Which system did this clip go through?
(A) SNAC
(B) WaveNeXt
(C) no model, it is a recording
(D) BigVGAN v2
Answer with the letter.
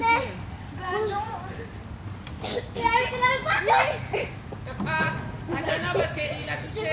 C